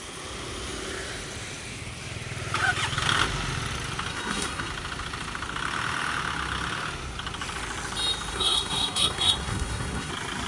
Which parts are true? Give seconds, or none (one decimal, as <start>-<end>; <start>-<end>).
0.0-4.1; 4.7-8.3; 10.1-10.5